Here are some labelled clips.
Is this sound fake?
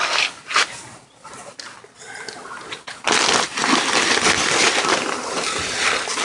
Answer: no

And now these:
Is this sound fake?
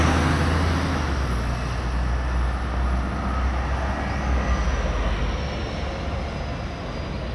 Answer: no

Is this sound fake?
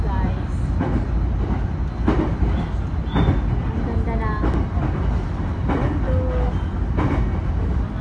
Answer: no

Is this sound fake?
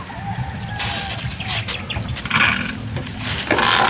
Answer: no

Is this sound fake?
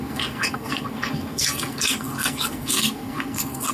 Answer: yes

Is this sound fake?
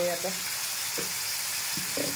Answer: no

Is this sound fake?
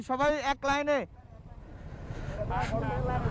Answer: no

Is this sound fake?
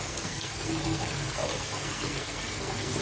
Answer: yes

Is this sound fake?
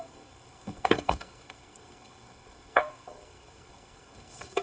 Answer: yes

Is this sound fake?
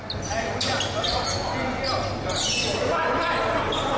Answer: no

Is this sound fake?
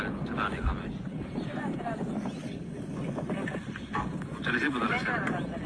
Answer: no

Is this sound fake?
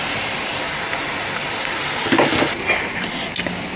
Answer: no